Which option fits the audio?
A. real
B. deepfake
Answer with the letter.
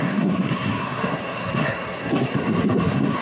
B